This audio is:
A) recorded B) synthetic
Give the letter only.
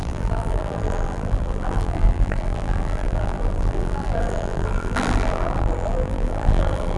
B